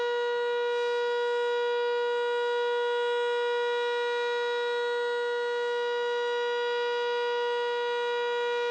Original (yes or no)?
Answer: yes